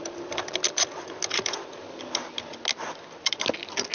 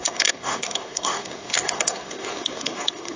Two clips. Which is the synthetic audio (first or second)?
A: second